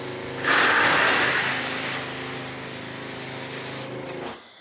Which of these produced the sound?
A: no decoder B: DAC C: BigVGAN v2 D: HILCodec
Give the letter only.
A